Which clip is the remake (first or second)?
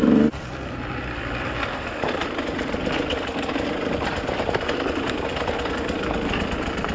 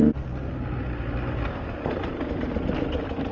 first